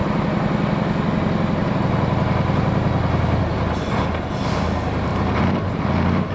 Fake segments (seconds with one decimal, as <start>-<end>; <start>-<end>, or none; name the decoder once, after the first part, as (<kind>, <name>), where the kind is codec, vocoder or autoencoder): none